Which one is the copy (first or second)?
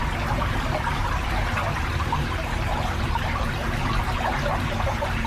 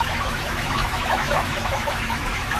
second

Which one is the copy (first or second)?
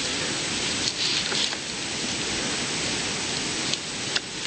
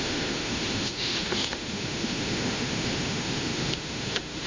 second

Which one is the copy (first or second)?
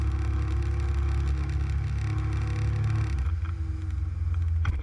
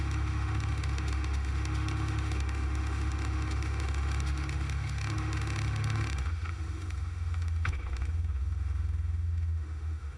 second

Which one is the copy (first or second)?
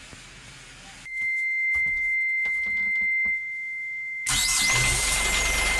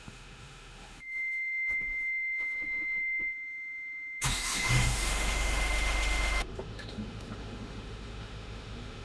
second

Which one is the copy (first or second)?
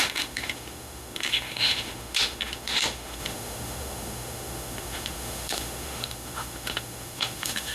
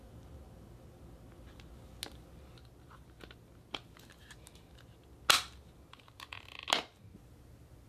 first